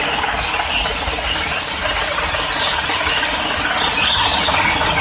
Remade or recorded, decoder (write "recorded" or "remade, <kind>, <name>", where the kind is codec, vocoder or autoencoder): recorded